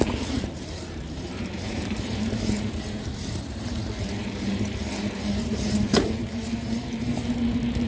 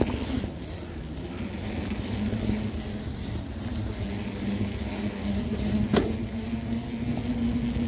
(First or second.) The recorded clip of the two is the second